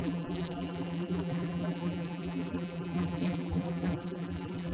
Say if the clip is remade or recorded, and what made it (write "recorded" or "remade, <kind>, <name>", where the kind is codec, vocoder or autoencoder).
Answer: remade, vocoder, BigVGAN v2